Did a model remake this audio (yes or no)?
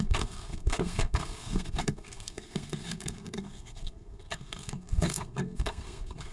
yes